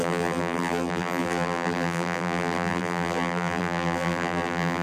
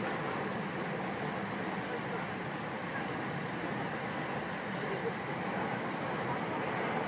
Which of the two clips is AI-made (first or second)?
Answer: first